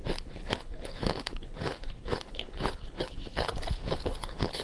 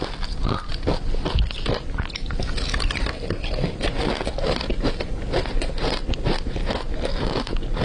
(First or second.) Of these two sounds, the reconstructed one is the first